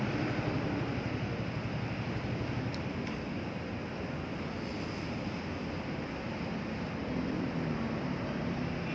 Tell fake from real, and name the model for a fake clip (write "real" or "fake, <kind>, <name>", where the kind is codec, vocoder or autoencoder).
real